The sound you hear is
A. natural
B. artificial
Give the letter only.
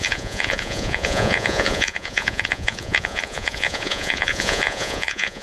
B